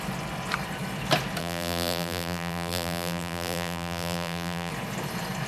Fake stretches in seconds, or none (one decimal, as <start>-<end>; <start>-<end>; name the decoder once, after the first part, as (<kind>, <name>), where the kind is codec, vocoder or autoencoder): 1.4-4.7 (vocoder, BigVGAN v2)